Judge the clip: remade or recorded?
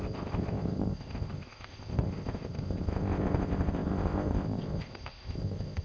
remade